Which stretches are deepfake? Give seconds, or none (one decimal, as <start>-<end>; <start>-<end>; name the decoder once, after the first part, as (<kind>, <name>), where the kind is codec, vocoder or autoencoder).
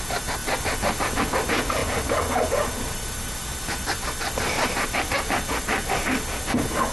none